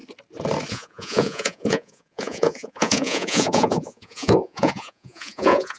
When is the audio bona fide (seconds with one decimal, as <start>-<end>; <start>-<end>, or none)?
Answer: 0.0-0.7

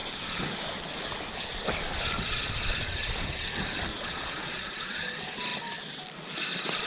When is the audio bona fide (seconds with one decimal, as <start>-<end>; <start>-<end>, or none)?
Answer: 0.0-3.9; 4.9-6.9

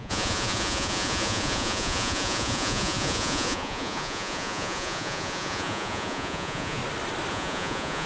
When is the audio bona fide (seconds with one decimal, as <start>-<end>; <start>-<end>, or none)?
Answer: 6.8-7.3

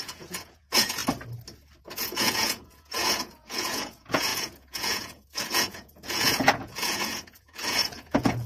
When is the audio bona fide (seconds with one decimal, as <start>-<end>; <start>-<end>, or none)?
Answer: 1.0-1.8

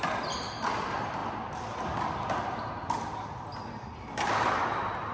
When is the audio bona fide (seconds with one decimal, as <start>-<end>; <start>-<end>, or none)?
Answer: 0.0-5.1

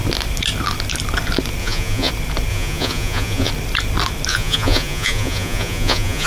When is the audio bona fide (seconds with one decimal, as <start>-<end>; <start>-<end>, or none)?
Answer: 0.0-1.6; 2.1-2.5; 3.5-4.3

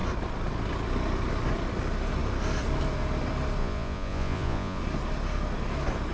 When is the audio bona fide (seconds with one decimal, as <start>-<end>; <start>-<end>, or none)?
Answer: 0.0-3.6; 4.8-6.1

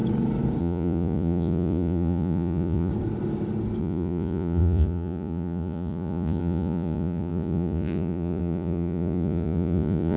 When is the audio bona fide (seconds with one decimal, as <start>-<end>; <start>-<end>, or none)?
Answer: 0.0-0.6; 2.9-3.8